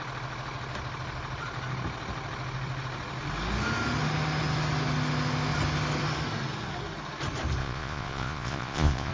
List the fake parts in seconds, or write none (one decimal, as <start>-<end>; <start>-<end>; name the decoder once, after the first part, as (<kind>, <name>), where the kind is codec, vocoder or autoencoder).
7.6-9.1 (vocoder, Vocos)